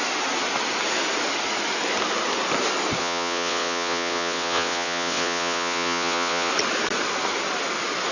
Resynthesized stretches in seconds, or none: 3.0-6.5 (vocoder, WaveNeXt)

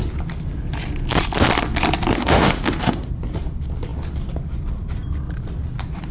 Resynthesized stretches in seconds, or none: 2.1-3.1 (autoencoder, DAC-VAE)